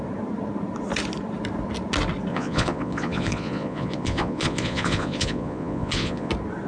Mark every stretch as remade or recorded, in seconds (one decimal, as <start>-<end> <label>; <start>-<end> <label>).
0.0-2.3 recorded; 2.3-6.3 remade; 6.3-6.7 recorded